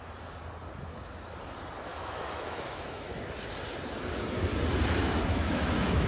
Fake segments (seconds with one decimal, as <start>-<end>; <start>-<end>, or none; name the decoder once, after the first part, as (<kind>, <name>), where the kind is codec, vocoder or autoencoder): 1.9-3.1 (autoencoder, DAC-VAE); 5.3-6.1

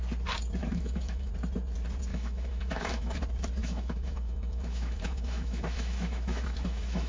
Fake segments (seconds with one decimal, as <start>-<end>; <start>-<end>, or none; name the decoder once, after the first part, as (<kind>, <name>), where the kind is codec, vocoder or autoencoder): 0.6-1.3 (autoencoder, DAC-VAE); 2.1-3.2; 3.6-7.1

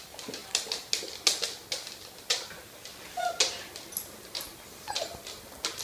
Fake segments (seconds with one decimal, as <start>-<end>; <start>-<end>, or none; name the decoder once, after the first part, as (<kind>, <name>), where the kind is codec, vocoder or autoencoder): none

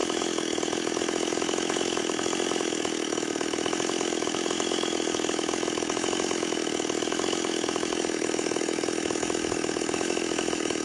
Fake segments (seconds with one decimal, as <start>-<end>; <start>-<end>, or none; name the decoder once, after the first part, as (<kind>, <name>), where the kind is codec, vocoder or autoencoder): 0.0-10.8 (autoencoder, DAC-VAE)

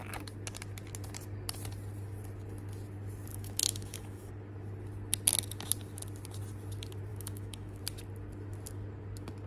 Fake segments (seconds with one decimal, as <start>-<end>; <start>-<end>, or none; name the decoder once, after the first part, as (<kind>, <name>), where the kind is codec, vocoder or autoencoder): 3.3-4.3 (autoencoder, DAC-VAE); 7.1-7.8

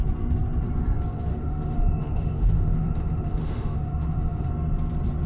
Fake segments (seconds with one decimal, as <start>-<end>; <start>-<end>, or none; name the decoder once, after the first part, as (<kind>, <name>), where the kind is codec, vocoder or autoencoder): 1.3-4.5 (autoencoder, DAC-VAE)

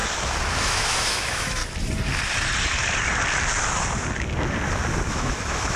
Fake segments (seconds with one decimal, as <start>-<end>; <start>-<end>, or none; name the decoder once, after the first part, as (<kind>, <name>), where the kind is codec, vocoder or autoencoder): 0.5-1.6 (autoencoder, DAC-VAE); 5.1-5.8

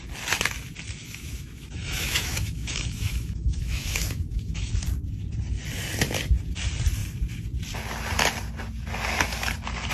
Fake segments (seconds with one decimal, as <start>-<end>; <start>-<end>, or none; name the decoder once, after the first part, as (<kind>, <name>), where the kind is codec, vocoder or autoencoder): 1.0-4.7 (autoencoder, DAC-VAE)